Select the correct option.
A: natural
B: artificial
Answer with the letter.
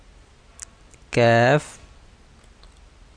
A